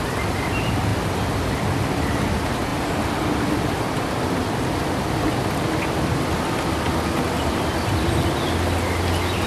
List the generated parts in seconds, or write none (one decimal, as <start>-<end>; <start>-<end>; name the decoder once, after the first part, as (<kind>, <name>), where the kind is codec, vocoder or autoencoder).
none